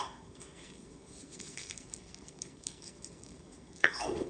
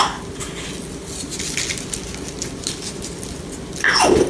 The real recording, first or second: second